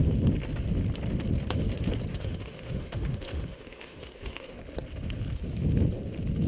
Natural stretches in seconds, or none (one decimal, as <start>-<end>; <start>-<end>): 0.0-2.1; 4.6-6.5